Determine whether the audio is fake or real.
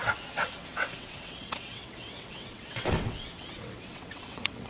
fake